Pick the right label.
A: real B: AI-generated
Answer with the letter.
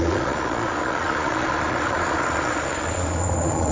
B